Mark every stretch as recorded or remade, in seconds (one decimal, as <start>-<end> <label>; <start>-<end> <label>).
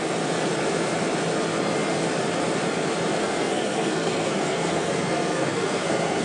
0.0-3.2 recorded; 3.2-6.2 remade